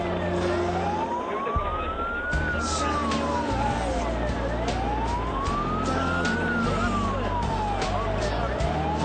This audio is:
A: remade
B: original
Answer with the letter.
B